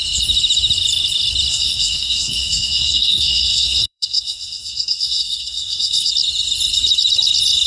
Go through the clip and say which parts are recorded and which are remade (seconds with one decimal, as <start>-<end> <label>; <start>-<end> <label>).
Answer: 0.0-1.5 recorded; 1.5-6.1 remade; 6.1-7.7 recorded